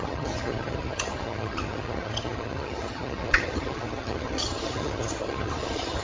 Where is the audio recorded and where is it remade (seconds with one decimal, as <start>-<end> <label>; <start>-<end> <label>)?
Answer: 0.0-6.0 remade